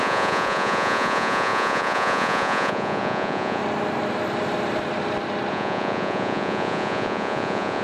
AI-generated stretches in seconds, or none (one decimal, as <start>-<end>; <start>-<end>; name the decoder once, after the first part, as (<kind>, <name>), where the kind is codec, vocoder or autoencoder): 0.0-3.6 (vocoder, Vocos); 5.5-7.8